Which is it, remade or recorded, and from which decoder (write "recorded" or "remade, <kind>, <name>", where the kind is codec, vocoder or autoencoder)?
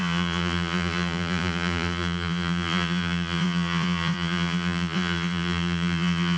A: remade, vocoder, Vocos